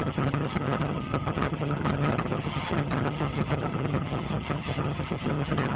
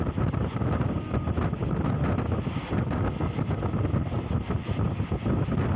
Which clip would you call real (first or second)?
second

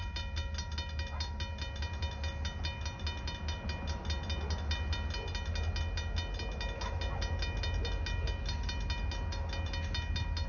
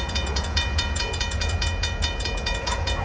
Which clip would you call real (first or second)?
first